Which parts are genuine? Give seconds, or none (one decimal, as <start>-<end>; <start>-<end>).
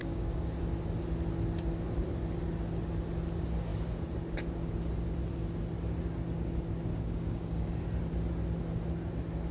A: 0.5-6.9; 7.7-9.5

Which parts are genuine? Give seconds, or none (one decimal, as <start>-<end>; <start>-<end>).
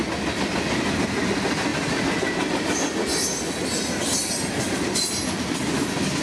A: 0.0-6.2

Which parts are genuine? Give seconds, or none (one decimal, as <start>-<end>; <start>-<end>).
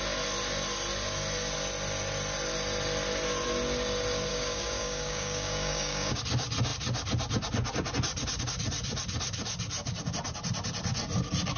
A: 0.0-4.3; 6.2-11.6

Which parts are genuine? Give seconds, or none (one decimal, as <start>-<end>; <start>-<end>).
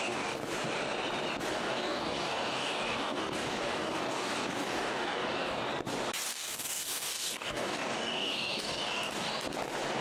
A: 0.4-1.5; 5.7-6.3; 9.3-10.0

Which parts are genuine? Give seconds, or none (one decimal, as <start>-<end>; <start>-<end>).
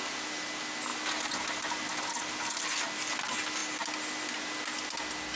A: 0.0-5.4